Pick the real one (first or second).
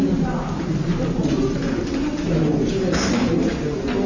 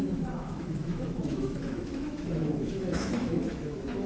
first